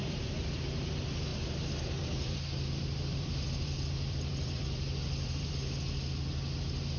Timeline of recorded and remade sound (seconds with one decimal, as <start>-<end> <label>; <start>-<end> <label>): 0.0-0.5 remade; 0.5-1.3 recorded; 1.3-5.5 remade; 5.5-7.0 recorded